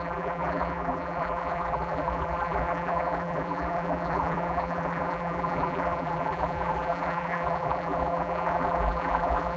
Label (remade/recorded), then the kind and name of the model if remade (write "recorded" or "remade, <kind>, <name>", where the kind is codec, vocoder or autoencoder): remade, vocoder, BigVGAN v2